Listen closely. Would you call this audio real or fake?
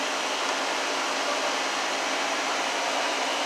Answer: real